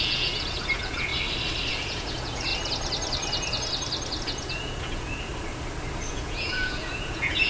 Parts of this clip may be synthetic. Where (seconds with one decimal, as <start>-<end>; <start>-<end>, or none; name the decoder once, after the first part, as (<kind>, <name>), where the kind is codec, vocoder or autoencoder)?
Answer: 0.0-1.1 (vocoder, Vocos); 1.7-2.5; 4.2-5.3; 6.1-7.5